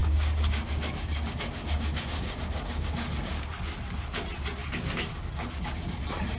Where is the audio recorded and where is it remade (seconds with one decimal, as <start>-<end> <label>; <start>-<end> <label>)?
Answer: 0.0-3.7 remade; 3.7-4.6 recorded; 4.6-6.0 remade; 6.0-6.4 recorded